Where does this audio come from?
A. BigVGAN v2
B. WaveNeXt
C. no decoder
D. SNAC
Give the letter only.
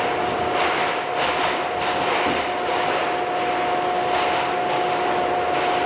C